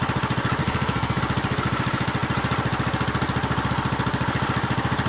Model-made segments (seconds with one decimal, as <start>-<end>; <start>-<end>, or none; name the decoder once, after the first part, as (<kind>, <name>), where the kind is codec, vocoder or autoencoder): 0.6-1.2 (codec, SNAC)